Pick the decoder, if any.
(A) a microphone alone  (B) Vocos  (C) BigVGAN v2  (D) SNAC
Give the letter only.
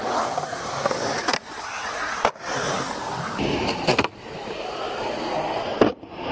A